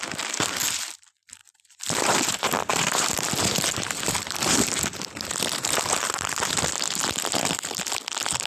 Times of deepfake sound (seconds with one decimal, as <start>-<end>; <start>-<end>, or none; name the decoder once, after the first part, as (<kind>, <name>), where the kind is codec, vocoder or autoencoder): 1.4-2.2 (vocoder, BigVGAN v2); 2.7-7.4